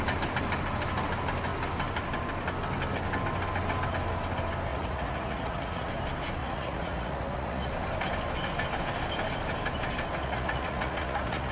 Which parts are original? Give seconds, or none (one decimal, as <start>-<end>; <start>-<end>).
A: 0.0-4.7; 5.9-6.4; 7.7-10.2